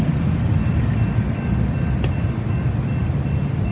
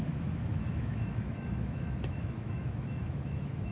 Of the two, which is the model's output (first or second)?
second